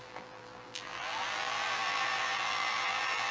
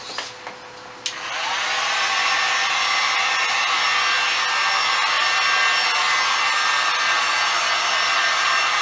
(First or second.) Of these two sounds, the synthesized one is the first